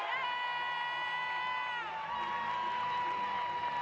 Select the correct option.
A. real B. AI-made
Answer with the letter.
A